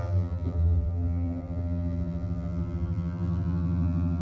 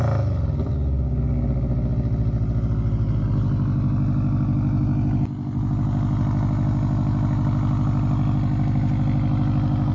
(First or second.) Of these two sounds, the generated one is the first